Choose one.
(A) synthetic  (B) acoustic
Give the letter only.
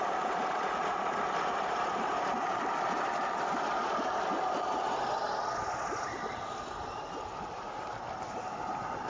B